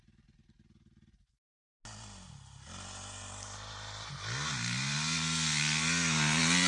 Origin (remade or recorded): recorded